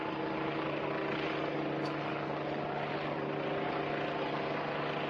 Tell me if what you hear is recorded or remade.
recorded